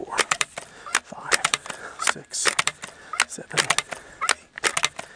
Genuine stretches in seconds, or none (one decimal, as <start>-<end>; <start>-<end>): 3.1-5.2